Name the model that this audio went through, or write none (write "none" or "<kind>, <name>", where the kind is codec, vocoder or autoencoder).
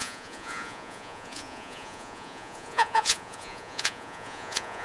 vocoder, Vocos